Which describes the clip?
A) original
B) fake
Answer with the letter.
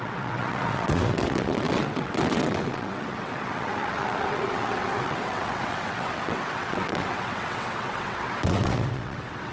B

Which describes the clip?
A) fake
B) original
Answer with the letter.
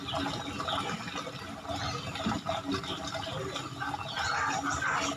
B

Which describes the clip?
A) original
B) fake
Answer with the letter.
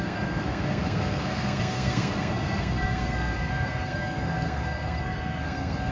B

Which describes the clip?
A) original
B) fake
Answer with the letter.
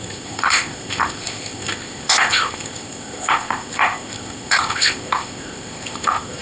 B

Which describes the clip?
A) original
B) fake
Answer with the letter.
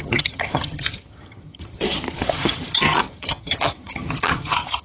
B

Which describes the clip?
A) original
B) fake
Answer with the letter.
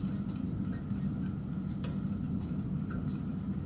A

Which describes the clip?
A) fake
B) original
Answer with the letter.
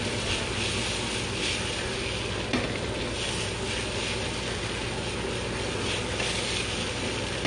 B